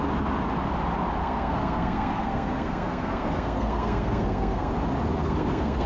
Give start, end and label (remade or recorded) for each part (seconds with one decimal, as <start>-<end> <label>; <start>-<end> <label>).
0.0-1.2 recorded; 1.2-4.7 remade; 4.7-5.2 recorded; 5.2-5.9 remade